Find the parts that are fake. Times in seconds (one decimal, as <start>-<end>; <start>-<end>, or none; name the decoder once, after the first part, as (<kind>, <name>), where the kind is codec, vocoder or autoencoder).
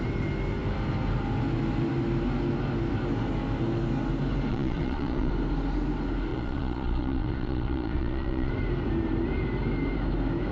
4.5-5.3 (vocoder, Vocos); 6.3-8.5